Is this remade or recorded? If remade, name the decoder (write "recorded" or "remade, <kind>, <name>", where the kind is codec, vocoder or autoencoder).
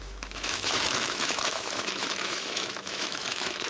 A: remade, autoencoder, DAC-VAE